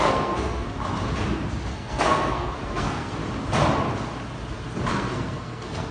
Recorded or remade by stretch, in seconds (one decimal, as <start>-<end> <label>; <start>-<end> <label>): 0.0-0.8 remade; 0.8-1.7 recorded; 1.7-3.2 remade; 3.2-4.9 recorded; 4.9-5.9 remade

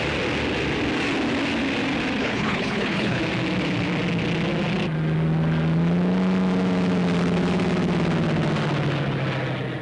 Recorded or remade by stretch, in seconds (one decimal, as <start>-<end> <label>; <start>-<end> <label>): 0.0-2.2 recorded; 2.2-3.2 remade; 3.2-9.8 recorded

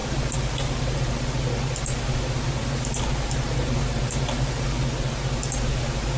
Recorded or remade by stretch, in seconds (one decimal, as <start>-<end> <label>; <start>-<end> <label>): 0.0-6.2 recorded

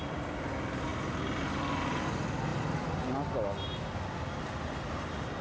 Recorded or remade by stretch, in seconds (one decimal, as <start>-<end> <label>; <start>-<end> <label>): 0.0-5.4 recorded

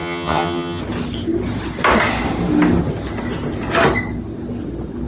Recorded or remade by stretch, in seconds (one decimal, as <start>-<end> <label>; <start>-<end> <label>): 0.0-0.8 remade; 0.8-5.1 recorded

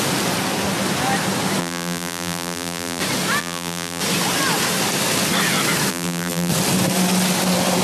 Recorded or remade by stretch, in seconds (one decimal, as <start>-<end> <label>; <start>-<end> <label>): 0.0-1.6 recorded; 1.6-3.0 remade; 3.0-3.4 recorded; 3.4-4.0 remade; 4.0-5.9 recorded; 5.9-6.5 remade; 6.5-7.8 recorded